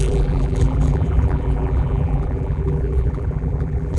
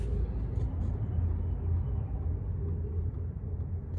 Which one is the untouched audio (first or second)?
second